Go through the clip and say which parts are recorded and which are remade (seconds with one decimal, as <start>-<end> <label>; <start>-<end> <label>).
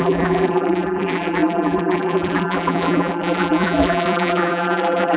0.0-5.2 remade